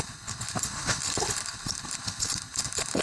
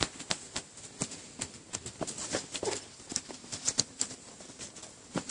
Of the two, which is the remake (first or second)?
first